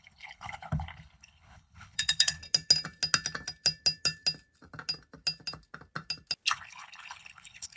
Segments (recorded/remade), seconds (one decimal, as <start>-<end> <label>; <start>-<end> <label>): 0.0-2.4 remade; 2.4-6.5 recorded; 6.5-7.8 remade